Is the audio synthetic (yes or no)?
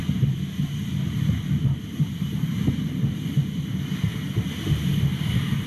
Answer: no